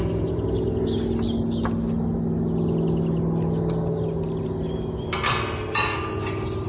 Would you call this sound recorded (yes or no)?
yes